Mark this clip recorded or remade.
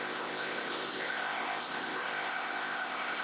remade